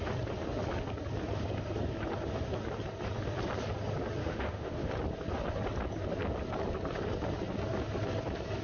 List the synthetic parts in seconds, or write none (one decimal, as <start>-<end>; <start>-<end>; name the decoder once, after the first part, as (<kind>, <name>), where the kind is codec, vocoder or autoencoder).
4.2-4.9 (autoencoder, DAC-VAE)

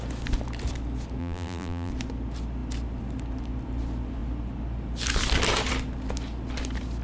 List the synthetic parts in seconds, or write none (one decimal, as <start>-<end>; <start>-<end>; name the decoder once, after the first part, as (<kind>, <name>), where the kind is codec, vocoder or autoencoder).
1.2-1.9 (vocoder, BigVGAN v2)

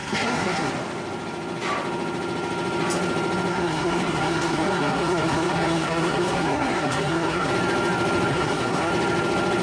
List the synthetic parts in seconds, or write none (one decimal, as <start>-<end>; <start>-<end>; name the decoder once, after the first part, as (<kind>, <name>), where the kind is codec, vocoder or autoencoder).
0.0-0.7 (codec, SNAC); 3.5-7.5; 8.3-8.9

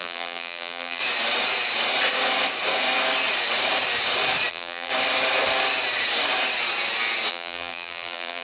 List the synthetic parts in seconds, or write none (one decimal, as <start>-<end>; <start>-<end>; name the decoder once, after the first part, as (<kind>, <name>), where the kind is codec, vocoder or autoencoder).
0.0-1.0 (vocoder, BigVGAN v2); 4.5-4.9; 7.3-8.4

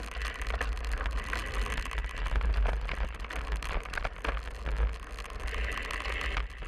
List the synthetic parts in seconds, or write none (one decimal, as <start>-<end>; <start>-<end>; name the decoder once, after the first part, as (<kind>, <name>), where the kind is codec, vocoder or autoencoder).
none